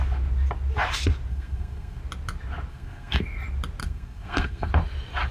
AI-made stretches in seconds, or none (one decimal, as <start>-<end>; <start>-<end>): 1.3-2.0; 2.7-3.2; 3.8-4.7